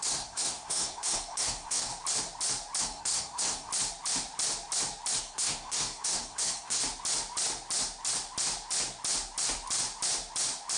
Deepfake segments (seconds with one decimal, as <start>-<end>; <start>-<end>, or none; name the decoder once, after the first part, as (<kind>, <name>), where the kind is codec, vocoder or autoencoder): 0.0-1.9 (codec, SNAC); 2.8-3.7; 5.2-6.8